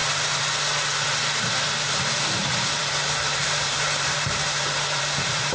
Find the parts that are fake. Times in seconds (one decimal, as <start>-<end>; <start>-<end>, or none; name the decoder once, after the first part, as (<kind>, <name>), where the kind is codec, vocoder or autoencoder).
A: 2.4-5.5 (vocoder, BigVGAN v2)